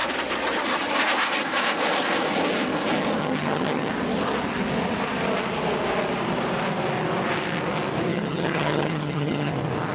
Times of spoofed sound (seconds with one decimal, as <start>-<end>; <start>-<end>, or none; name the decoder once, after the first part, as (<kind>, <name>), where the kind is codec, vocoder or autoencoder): 3.2-3.9 (vocoder, HiFi-GAN); 8.1-9.5